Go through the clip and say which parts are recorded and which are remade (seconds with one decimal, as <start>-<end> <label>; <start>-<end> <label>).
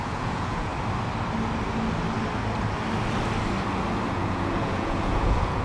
0.0-0.7 remade; 0.7-4.1 recorded; 4.1-5.6 remade